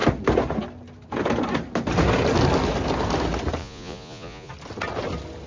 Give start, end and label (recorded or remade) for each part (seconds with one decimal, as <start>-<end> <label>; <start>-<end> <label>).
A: 0.0-3.6 recorded; 3.6-4.5 remade; 4.5-5.5 recorded